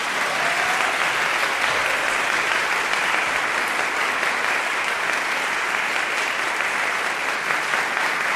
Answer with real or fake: real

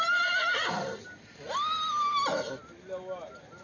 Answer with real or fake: real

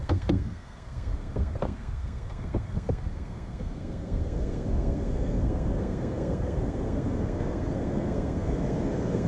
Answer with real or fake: fake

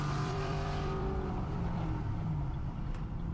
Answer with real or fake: fake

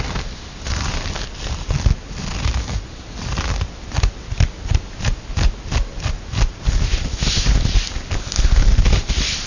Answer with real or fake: real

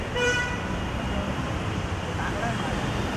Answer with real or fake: fake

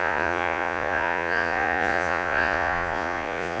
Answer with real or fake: fake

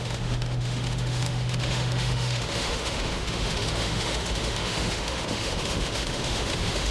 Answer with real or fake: fake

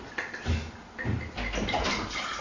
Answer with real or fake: real